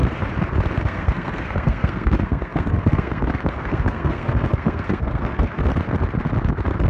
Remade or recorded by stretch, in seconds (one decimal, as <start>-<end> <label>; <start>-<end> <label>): 0.0-0.8 recorded; 0.8-5.7 remade; 5.7-6.9 recorded